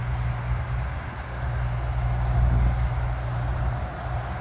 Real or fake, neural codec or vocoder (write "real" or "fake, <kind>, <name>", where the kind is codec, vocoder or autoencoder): real